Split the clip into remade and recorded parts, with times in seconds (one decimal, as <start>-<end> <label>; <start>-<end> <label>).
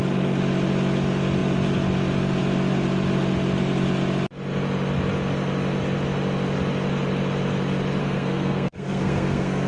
0.0-8.0 recorded; 8.0-9.7 remade